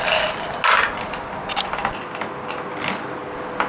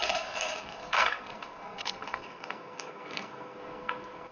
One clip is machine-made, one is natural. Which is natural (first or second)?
first